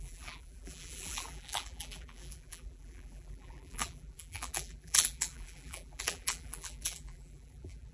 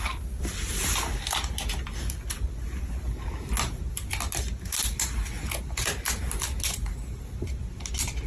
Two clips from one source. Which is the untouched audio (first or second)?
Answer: second